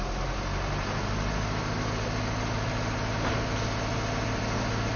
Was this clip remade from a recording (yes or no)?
no